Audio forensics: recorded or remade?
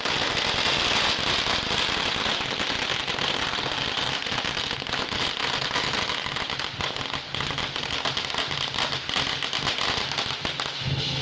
recorded